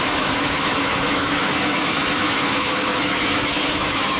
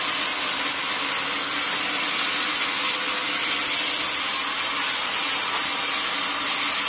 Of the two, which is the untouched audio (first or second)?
second